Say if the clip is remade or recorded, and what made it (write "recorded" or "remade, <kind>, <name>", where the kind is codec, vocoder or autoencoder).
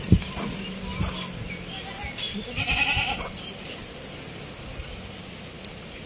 recorded